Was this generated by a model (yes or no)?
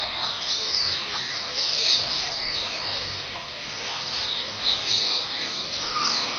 yes